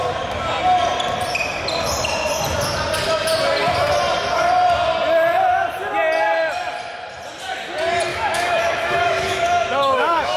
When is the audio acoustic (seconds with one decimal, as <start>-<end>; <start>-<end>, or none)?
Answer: 0.0-8.1